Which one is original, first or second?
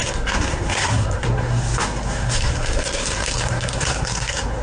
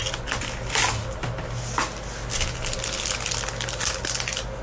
second